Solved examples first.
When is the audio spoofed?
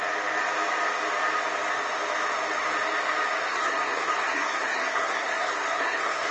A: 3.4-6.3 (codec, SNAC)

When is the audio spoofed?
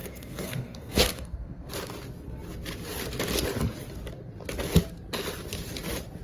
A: 0.0-1.7 (codec, SNAC)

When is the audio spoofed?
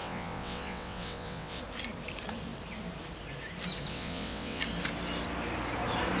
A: 0.0-1.6 (vocoder, WaveNeXt); 3.9-4.6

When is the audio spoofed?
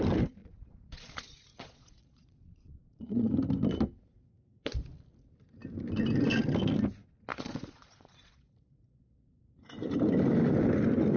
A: 0.4-3.3 (vocoder, Vocos); 7.3-9.3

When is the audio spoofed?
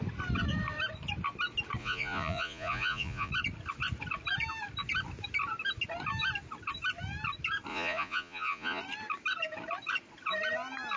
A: 1.8-3.3 (vocoder, Vocos); 7.7-8.8